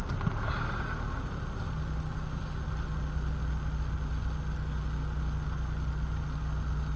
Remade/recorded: recorded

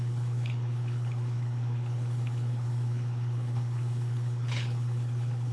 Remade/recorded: remade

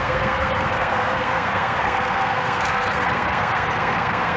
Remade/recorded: remade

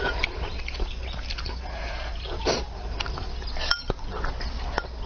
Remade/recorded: recorded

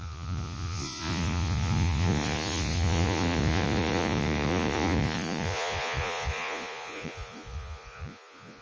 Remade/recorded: remade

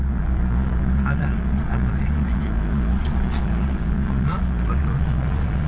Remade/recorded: remade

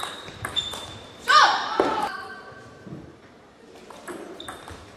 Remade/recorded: remade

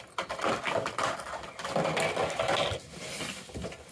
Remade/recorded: recorded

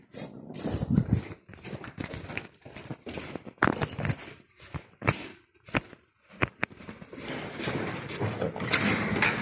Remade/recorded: remade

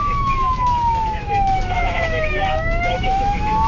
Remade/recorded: remade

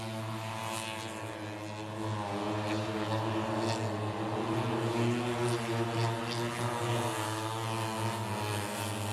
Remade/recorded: recorded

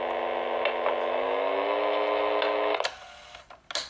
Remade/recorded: recorded